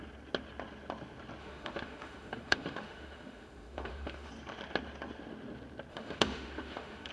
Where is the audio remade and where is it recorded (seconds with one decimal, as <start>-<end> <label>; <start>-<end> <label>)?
0.0-1.4 recorded; 1.4-4.3 remade; 4.3-5.9 recorded; 5.9-7.1 remade